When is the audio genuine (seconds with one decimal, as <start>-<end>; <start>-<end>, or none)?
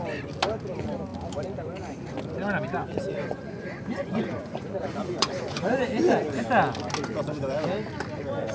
0.0-2.8; 5.9-8.5